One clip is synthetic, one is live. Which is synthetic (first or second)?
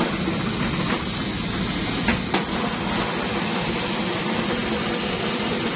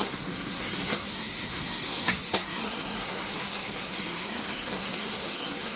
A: second